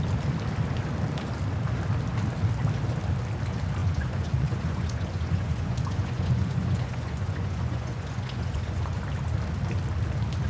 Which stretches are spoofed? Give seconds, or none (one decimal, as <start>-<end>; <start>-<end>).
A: 3.8-9.0